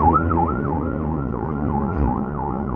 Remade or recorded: remade